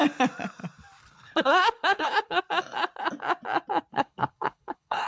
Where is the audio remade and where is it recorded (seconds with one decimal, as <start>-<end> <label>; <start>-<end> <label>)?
0.0-1.0 recorded; 1.0-2.4 remade; 2.4-3.9 recorded; 3.9-5.1 remade